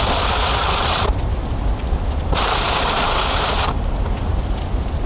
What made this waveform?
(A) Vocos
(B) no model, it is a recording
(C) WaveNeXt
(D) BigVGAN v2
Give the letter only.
B